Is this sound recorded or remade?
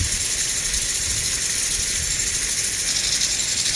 recorded